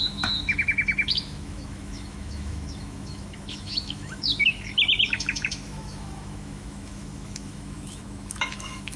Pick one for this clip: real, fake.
fake